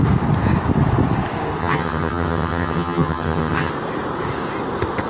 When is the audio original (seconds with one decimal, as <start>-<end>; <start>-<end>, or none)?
0.0-1.6; 3.7-5.1